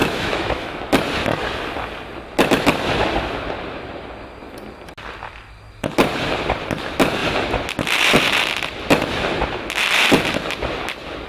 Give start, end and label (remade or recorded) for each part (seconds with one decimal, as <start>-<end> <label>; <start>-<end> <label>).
0.0-0.8 remade; 0.8-11.3 recorded

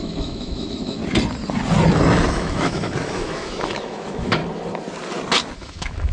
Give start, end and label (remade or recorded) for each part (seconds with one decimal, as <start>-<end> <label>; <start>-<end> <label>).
0.0-1.0 remade; 1.0-2.3 recorded; 2.3-4.4 remade; 4.4-5.6 recorded; 5.6-6.1 remade

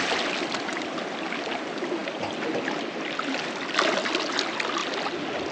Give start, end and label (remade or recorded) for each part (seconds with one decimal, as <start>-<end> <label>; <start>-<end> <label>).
0.0-5.5 recorded

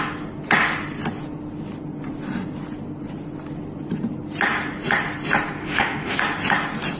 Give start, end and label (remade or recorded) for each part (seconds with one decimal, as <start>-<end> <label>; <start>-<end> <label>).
0.0-5.6 recorded; 5.6-6.2 remade; 6.2-7.0 recorded

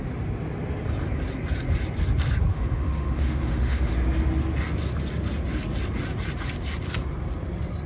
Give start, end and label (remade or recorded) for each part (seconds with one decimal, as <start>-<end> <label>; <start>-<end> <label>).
0.0-2.5 recorded; 2.5-3.9 remade; 3.9-7.9 recorded

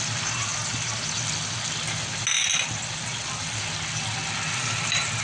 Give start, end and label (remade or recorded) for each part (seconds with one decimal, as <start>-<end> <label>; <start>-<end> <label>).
0.0-5.2 recorded

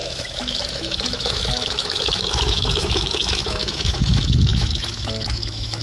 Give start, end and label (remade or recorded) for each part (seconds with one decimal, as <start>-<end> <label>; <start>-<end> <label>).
0.0-5.8 remade

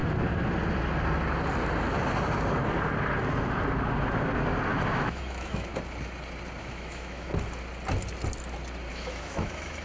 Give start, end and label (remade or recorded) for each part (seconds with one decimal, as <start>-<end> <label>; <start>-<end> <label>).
0.0-4.9 recorded; 4.9-5.7 remade; 5.7-6.6 recorded; 6.6-7.3 remade; 7.3-8.9 recorded; 8.9-9.8 remade